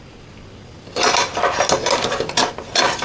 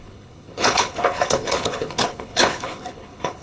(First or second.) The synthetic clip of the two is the second